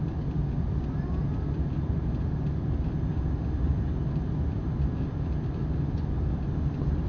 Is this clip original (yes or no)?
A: yes